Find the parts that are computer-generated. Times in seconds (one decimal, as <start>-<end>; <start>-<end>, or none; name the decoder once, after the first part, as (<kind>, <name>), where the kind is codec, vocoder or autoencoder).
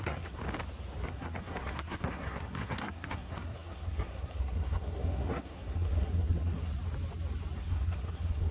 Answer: 0.0-0.4 (codec, SNAC); 1.0-6.7; 7.6-8.5